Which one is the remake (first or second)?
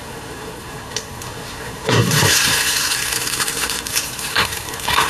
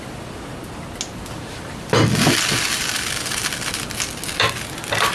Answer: first